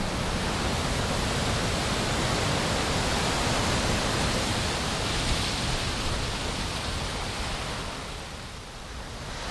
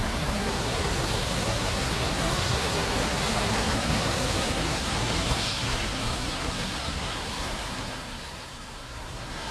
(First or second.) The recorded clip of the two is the first